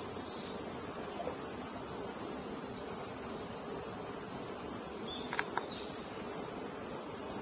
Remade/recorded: recorded